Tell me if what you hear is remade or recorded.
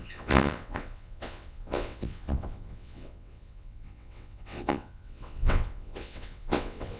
remade